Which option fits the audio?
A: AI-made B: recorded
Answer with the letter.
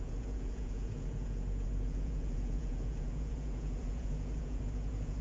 A